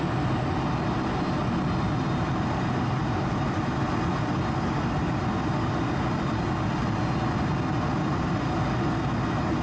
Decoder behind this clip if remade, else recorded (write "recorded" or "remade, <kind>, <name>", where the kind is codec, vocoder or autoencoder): recorded